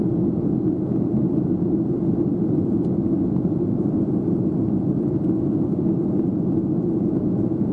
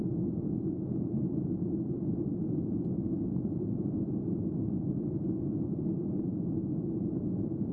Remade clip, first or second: second